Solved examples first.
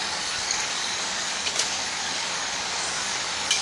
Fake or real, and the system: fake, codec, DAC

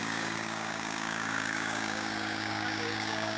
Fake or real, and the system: fake, codec, DAC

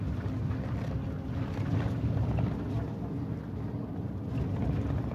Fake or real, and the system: real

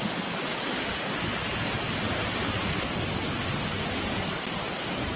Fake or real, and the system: real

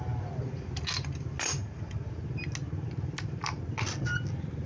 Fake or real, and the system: real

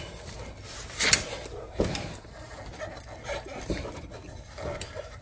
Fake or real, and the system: real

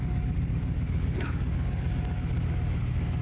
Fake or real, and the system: fake, codec, DAC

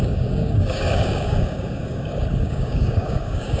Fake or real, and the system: fake, codec, DAC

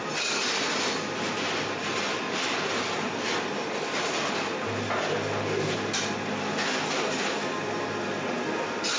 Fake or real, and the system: real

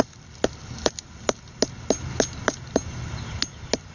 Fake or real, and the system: real